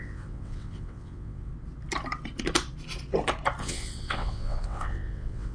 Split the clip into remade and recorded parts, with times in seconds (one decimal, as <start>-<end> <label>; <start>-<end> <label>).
0.0-1.5 remade; 1.5-3.6 recorded; 3.6-5.5 remade